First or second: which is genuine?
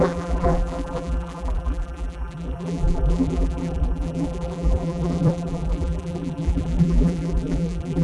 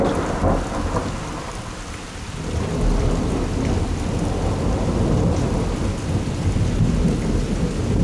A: second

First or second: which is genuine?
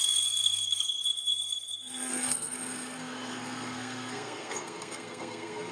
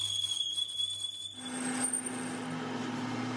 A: second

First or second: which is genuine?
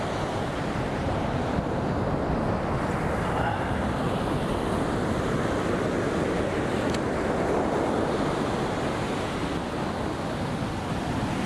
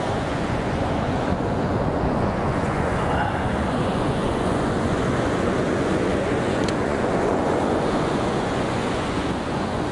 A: first